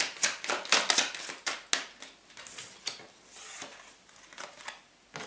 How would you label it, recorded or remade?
recorded